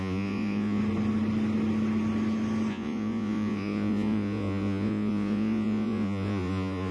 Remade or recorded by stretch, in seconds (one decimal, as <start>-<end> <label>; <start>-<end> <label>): 0.0-0.8 remade; 0.8-2.7 recorded; 2.7-6.9 remade